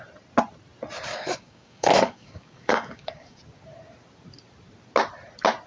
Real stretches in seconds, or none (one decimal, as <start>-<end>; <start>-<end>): 0.0-1.1; 3.4-5.7